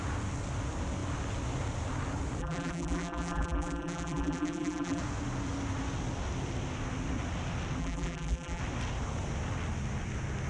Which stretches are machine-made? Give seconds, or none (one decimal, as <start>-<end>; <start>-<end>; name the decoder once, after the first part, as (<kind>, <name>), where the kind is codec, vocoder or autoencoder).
2.4-5.0 (vocoder, BigVGAN v2); 7.8-8.6